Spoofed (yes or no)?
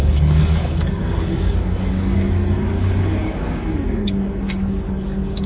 yes